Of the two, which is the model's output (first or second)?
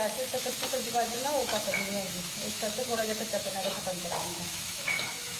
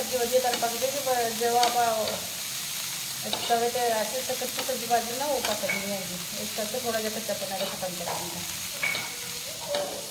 first